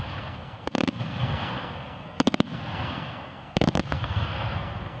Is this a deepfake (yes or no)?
yes